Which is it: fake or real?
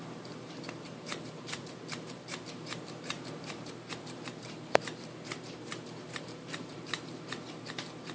fake